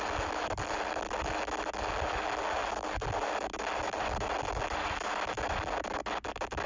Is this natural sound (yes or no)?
yes